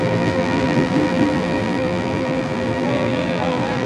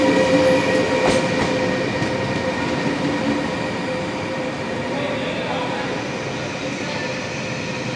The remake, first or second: first